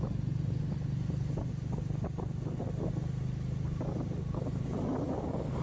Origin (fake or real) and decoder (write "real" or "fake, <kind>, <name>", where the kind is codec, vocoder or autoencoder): real